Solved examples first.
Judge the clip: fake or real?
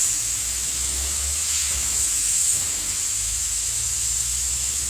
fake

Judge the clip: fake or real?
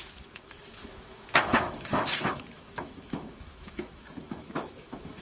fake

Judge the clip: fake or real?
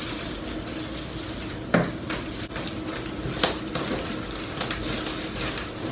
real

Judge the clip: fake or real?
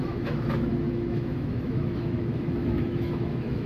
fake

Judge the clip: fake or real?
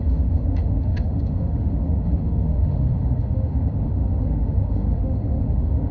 fake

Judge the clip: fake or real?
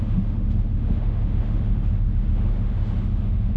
fake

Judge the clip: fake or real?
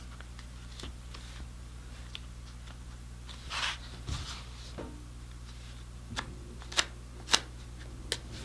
real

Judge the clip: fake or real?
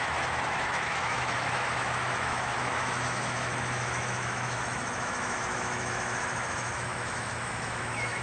fake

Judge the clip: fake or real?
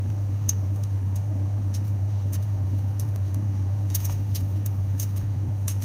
fake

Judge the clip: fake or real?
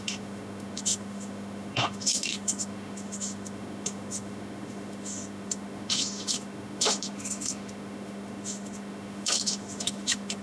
fake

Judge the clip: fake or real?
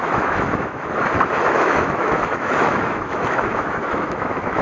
fake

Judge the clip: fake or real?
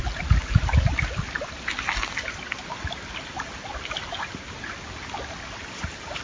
real